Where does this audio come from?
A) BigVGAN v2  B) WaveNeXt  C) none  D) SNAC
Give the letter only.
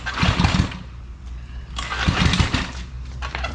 C